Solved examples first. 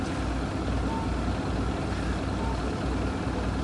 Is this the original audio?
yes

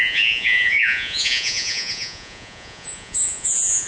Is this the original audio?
no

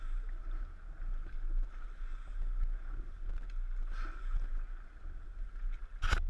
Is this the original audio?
yes